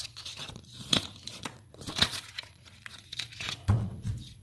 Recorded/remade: remade